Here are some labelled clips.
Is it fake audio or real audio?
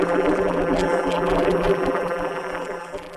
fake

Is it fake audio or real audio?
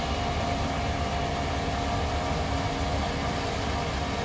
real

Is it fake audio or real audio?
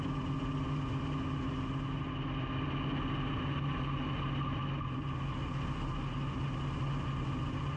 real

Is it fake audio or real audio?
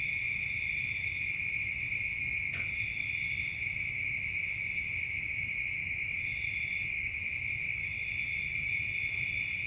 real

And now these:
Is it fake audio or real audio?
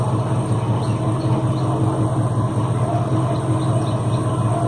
real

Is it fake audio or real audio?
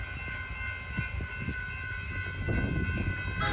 real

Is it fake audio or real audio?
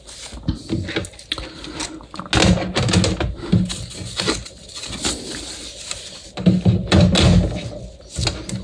real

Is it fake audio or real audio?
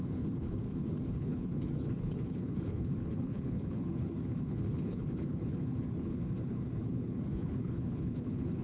fake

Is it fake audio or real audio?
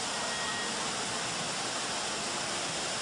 real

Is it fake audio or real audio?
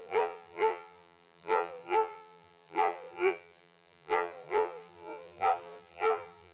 fake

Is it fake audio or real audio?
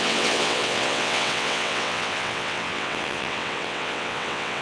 fake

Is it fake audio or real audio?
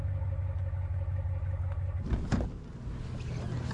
real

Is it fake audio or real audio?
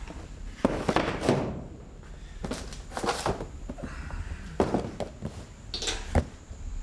real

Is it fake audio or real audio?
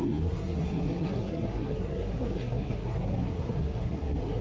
fake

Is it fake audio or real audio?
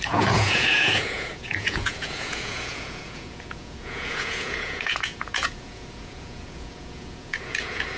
fake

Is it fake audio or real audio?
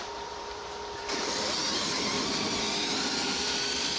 fake